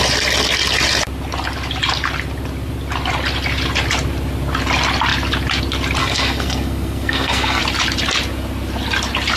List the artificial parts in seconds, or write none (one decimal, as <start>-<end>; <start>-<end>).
6.0-7.6

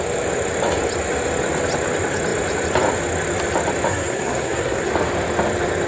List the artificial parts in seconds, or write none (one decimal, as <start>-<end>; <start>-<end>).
3.9-4.9

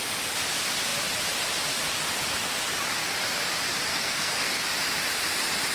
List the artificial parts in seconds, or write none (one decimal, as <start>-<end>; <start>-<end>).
3.9-4.6

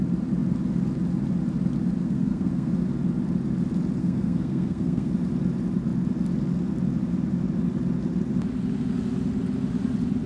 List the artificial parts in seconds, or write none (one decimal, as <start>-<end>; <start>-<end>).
2.0-2.7; 4.0-5.1